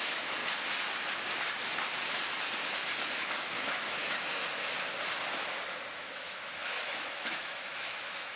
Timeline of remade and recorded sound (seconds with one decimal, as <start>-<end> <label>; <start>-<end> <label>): 0.0-0.4 remade; 0.4-3.2 recorded; 3.2-4.0 remade; 4.0-5.9 recorded; 5.9-8.4 remade